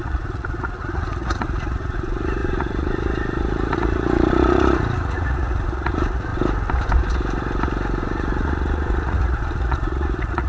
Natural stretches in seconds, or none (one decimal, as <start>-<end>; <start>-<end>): 6.3-8.0

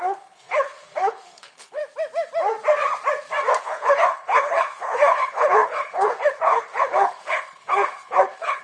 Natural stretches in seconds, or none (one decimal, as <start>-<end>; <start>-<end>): 1.8-3.6

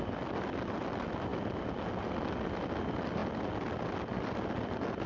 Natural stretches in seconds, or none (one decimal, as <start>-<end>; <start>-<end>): 0.0-5.1

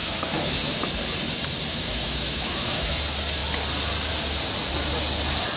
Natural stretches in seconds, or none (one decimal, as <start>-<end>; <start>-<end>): 0.7-1.7; 3.0-5.6